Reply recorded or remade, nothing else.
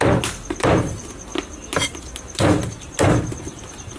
remade